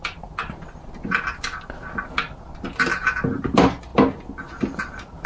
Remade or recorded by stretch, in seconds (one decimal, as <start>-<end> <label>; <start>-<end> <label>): 0.0-5.3 recorded